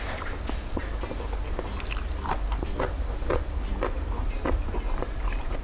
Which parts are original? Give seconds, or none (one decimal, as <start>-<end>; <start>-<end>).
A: 0.8-4.2